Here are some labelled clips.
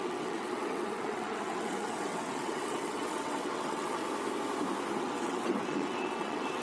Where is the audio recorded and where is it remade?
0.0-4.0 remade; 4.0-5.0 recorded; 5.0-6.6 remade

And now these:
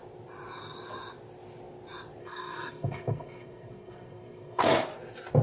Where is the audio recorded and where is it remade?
0.0-2.2 recorded; 2.2-4.6 remade; 4.6-5.4 recorded

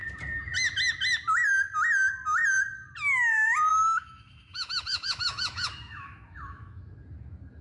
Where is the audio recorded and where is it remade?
0.0-3.7 recorded; 3.7-6.8 remade; 6.8-7.6 recorded

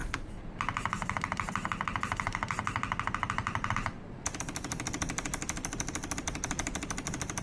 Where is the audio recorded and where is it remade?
0.0-4.4 recorded; 4.4-7.4 remade

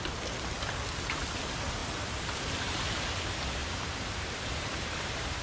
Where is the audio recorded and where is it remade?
0.0-3.6 recorded; 3.6-5.4 remade